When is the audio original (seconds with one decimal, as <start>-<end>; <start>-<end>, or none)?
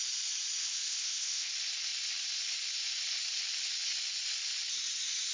0.0-0.6; 1.5-5.3